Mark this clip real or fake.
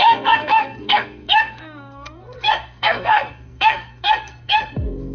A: fake